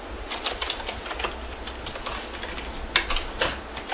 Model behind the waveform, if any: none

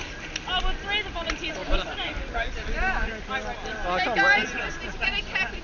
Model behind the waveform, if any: none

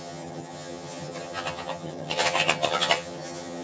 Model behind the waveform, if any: vocoder, HiFi-GAN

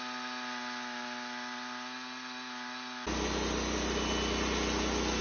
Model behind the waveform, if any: none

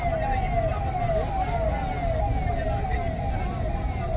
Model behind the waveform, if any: none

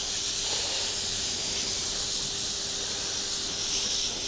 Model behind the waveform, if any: none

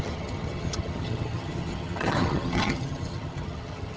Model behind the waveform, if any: vocoder, HiFi-GAN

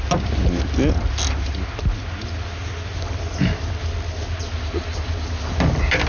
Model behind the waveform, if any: none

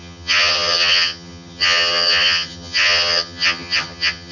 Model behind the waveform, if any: vocoder, HiFi-GAN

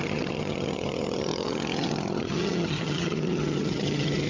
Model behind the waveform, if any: vocoder, HiFi-GAN